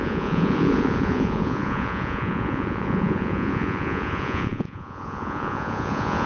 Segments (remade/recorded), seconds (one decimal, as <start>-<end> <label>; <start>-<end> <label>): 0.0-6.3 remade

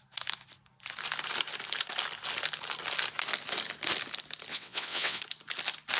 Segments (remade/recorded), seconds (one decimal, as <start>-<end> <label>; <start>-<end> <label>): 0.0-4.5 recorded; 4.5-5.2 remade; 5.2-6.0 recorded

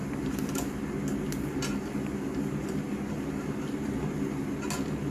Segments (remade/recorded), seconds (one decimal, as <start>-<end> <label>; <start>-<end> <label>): 0.0-5.1 recorded

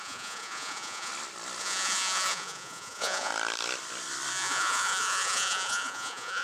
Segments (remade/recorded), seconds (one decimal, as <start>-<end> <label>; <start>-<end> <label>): 0.0-1.1 remade; 1.1-1.6 recorded; 1.6-3.3 remade; 3.3-4.3 recorded; 4.3-6.4 remade